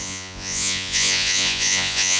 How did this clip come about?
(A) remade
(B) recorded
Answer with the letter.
A